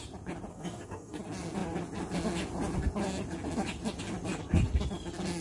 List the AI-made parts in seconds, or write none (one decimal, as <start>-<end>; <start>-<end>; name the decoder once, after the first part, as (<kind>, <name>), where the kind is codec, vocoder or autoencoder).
0.5-1.2 (codec, DAC)